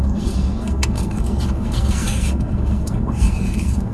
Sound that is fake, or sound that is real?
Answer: fake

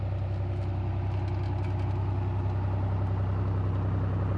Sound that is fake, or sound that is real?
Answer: real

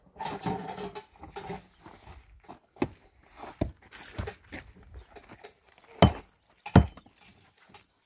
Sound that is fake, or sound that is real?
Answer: real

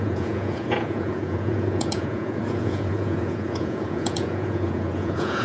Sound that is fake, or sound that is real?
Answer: fake